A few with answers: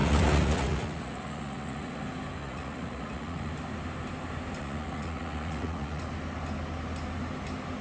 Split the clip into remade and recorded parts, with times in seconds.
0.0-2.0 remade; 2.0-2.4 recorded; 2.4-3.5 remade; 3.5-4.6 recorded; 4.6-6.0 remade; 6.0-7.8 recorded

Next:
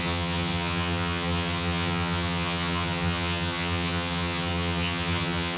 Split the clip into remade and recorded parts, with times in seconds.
0.0-5.6 remade

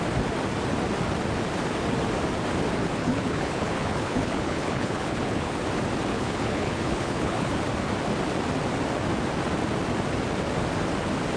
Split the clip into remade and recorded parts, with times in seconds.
0.0-3.0 recorded; 3.0-5.6 remade; 5.6-6.1 recorded; 6.1-7.6 remade; 7.6-11.4 recorded

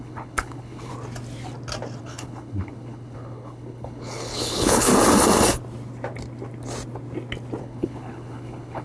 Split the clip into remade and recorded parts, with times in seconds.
0.0-0.9 remade; 0.9-2.0 recorded; 2.0-4.9 remade; 4.9-7.6 recorded; 7.6-8.8 remade

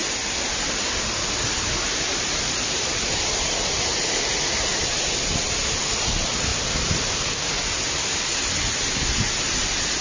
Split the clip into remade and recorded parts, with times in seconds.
0.0-2.1 recorded; 2.1-5.4 remade; 5.4-10.0 recorded

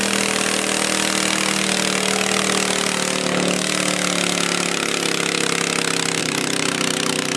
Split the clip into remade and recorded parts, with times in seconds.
0.0-6.2 recorded; 6.2-7.4 remade